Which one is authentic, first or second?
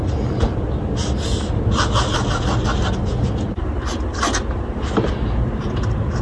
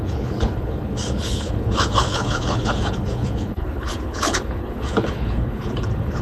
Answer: first